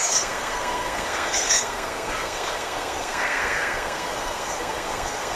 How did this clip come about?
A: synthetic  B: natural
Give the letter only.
A